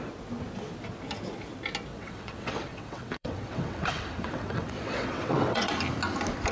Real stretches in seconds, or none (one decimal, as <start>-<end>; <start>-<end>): 0.0-1.9; 5.7-6.5